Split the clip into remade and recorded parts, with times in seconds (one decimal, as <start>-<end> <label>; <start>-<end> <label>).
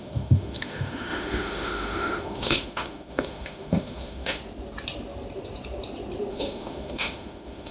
0.0-4.4 remade; 4.4-6.3 recorded; 6.3-7.7 remade